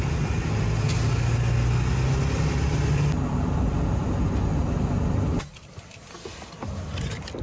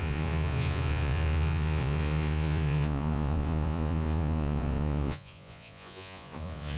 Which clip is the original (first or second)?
first